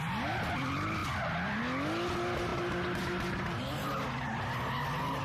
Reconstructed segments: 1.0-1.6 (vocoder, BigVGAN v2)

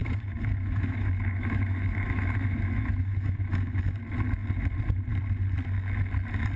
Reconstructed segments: 0.0-4.0 (autoencoder, DAC-VAE)

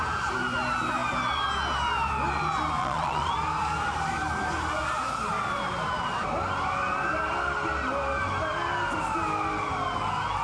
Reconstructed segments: 2.8-3.3 (vocoder, Vocos)

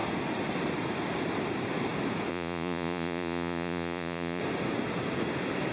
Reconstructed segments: 2.3-4.4 (vocoder, Vocos)

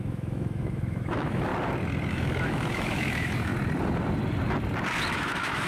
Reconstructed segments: 0.0-1.5 (autoencoder, DAC-VAE); 2.1-3.5; 5.1-5.7

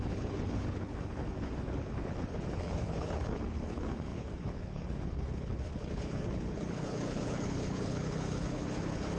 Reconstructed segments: 0.0-9.2 (codec, HILCodec)

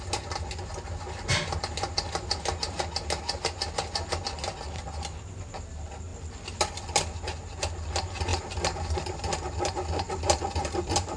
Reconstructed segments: 6.1-7.2 (vocoder, BigVGAN v2); 8.3-11.2